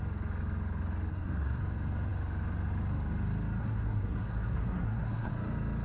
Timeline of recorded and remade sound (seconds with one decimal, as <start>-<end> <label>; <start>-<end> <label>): 0.0-1.1 recorded; 1.1-1.6 remade; 1.6-3.6 recorded; 3.6-5.3 remade; 5.3-5.8 recorded